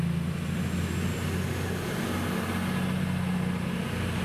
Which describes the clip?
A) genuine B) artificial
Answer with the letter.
A